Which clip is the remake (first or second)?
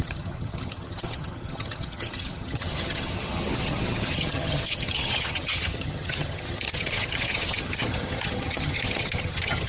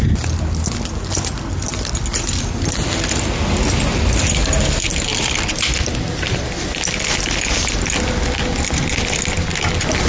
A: first